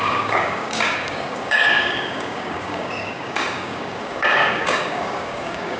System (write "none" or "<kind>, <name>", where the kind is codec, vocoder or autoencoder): codec, DAC